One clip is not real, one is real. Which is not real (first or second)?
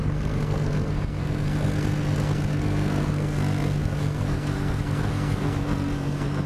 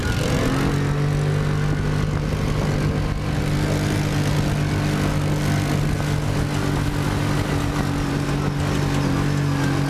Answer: first